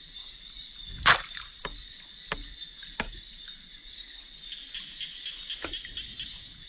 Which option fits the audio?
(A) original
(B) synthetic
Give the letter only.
A